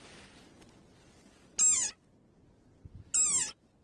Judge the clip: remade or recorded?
recorded